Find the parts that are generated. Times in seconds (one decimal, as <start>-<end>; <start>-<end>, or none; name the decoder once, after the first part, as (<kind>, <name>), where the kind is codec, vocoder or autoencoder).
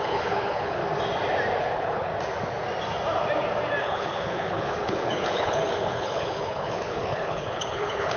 0.0-0.8 (codec, HILCodec); 1.6-2.1; 3.8-8.2